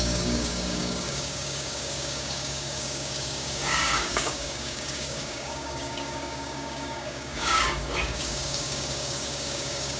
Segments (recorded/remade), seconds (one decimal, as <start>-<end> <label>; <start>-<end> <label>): 0.0-10.0 remade